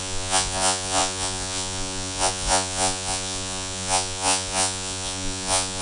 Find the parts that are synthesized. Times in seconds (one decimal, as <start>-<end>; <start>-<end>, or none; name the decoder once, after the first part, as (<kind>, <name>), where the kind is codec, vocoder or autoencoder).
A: 0.0-5.8 (vocoder, Vocos)